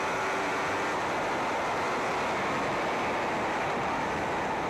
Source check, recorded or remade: recorded